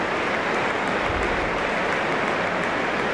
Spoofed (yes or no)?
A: no